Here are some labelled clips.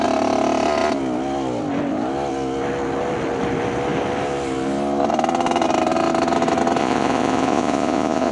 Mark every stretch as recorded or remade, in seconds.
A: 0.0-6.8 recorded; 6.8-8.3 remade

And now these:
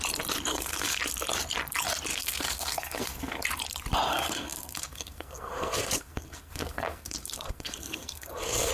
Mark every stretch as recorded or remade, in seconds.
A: 0.0-0.5 recorded; 0.5-1.0 remade; 1.0-2.1 recorded; 2.1-3.4 remade; 3.4-4.1 recorded; 4.1-8.7 remade

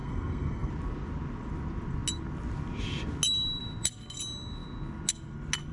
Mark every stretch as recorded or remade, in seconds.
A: 0.0-0.7 remade; 0.7-5.7 recorded